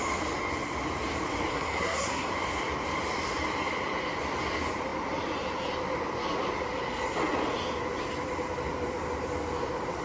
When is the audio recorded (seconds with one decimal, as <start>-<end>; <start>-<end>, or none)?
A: 0.0-1.5; 2.3-10.0